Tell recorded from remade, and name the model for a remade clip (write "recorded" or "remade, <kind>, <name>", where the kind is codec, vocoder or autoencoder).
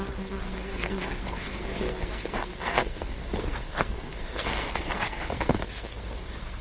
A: remade, codec, SNAC